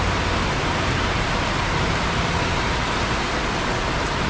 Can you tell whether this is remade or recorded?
recorded